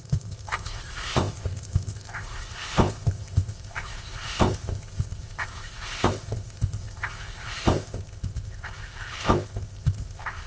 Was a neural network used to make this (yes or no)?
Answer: yes